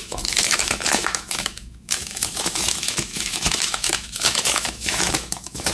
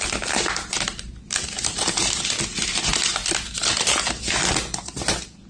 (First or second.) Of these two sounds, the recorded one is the second